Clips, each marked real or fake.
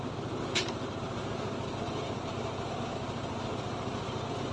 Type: real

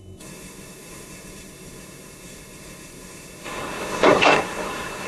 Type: fake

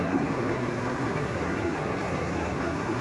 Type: fake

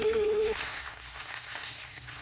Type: fake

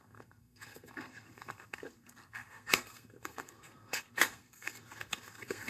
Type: fake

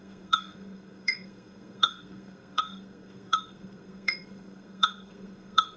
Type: fake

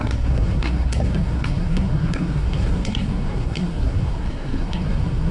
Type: fake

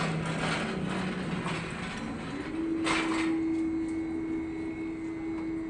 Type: real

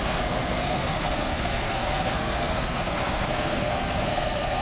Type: fake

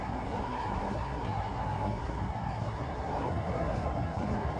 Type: fake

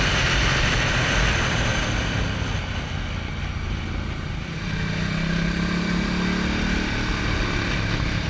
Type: real